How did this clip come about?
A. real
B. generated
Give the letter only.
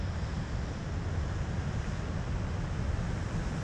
A